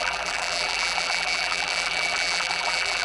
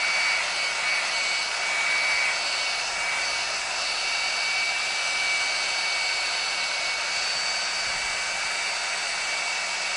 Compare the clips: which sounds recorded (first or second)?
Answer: second